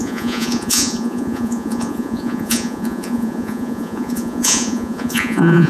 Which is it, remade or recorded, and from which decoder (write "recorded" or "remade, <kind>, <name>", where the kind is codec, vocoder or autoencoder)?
remade, vocoder, Vocos